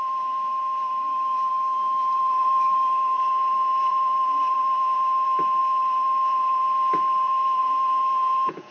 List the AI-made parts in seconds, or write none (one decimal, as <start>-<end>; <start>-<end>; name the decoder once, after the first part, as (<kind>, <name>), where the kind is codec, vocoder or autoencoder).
0.0-8.7 (vocoder, Vocos)